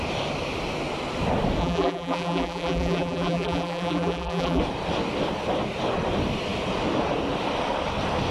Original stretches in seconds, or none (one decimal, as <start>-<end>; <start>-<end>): 0.0-1.6; 4.6-8.3